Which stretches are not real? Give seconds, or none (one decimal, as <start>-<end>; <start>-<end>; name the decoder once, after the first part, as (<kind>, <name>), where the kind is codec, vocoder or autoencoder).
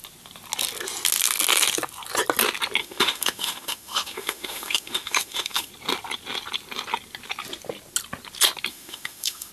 2.8-5.7 (autoencoder, DAC-VAE); 8.7-9.5